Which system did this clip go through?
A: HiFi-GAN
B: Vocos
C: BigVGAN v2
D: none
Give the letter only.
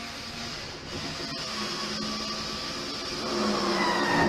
D